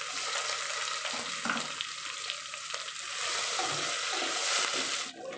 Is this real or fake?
real